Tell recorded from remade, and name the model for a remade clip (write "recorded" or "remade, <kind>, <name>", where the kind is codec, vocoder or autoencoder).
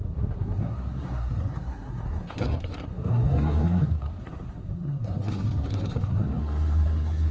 remade, codec, SNAC